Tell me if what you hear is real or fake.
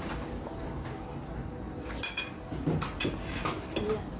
real